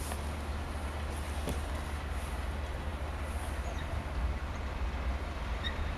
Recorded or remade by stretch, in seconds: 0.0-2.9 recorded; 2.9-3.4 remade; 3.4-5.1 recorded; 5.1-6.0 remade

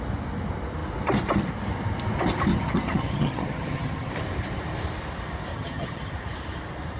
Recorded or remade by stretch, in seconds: 0.0-2.5 recorded; 2.5-4.1 remade; 4.1-5.5 recorded; 5.5-6.1 remade; 6.1-7.0 recorded

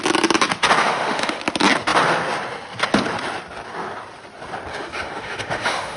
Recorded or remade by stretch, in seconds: 0.0-0.8 recorded; 0.8-1.4 remade; 1.4-4.7 recorded; 4.7-6.0 remade

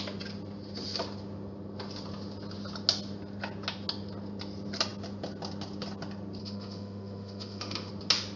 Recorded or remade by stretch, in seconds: 0.0-6.4 recorded; 6.4-7.9 remade; 7.9-8.4 recorded

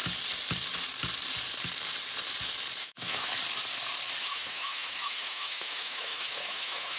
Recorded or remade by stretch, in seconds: 0.0-2.8 recorded; 2.8-3.3 remade; 3.3-4.2 recorded; 4.2-7.0 remade

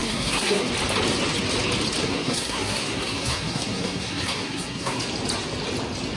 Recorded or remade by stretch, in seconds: 0.0-0.7 remade; 0.7-2.0 recorded; 2.0-5.0 remade; 5.0-6.2 recorded

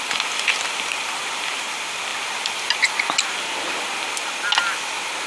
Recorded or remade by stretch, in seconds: 0.0-5.3 recorded